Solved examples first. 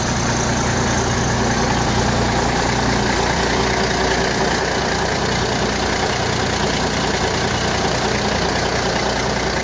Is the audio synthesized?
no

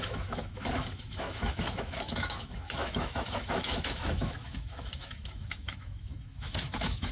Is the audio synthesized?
yes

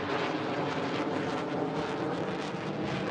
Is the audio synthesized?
no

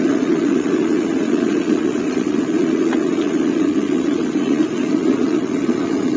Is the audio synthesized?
yes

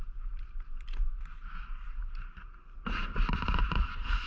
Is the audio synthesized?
yes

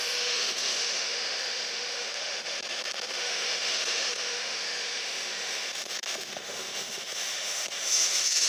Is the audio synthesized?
yes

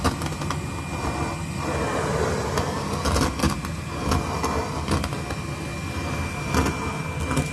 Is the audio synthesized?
no